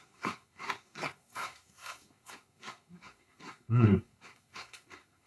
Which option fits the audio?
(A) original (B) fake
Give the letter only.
B